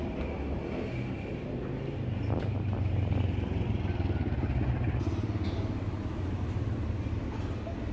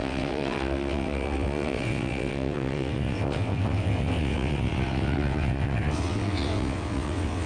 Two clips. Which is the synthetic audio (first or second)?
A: second